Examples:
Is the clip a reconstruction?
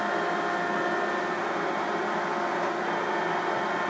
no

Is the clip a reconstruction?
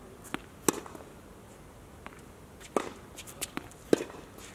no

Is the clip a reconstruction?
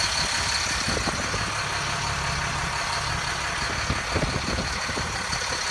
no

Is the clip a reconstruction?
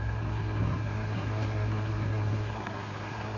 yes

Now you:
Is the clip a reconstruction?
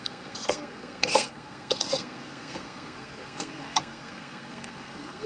yes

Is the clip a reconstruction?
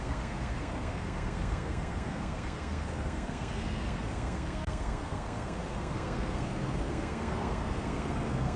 yes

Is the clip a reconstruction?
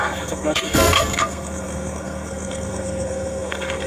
yes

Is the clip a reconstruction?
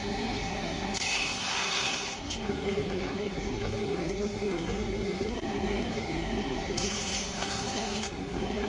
yes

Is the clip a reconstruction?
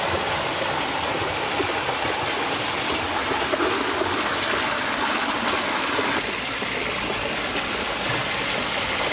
no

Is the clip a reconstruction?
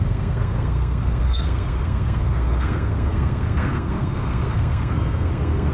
yes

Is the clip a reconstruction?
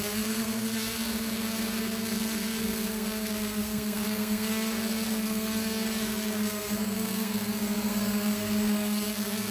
yes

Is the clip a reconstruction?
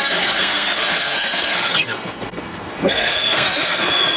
yes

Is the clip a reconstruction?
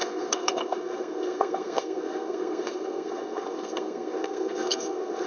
yes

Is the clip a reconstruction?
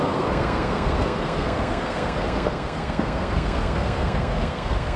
yes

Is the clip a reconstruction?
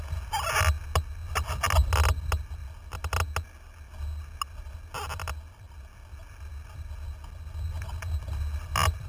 no